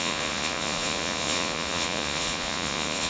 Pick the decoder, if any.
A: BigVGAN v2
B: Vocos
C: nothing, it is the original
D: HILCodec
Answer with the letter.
B